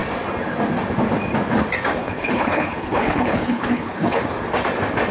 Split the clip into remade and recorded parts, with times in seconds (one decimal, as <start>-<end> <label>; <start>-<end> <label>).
0.0-2.0 recorded; 2.0-4.2 remade; 4.2-5.1 recorded